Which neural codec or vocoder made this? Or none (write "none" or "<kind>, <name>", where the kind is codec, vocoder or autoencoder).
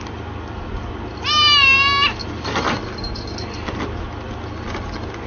none